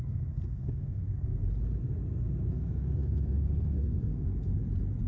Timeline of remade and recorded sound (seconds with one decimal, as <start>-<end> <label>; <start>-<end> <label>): 0.0-1.4 remade; 1.4-2.5 recorded; 2.5-4.5 remade; 4.5-5.1 recorded